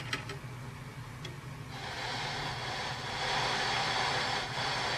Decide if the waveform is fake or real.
real